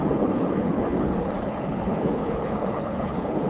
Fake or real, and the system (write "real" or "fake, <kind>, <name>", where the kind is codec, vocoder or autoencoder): fake, codec, HILCodec